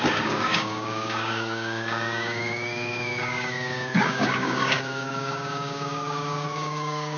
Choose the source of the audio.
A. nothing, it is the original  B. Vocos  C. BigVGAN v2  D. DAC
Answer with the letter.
D